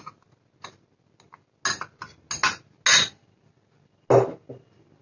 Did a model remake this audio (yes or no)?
no